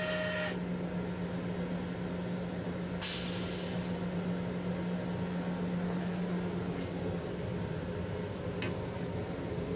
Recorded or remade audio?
recorded